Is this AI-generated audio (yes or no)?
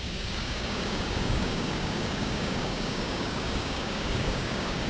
yes